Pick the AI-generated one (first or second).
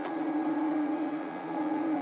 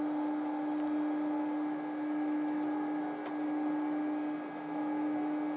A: first